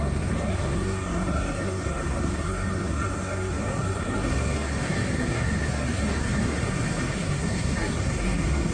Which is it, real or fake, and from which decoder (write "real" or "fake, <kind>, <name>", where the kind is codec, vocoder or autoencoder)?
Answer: fake, codec, SNAC